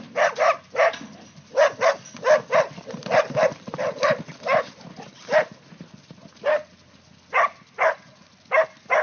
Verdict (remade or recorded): recorded